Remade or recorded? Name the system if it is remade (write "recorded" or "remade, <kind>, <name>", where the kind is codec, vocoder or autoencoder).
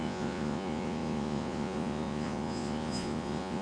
remade, vocoder, Vocos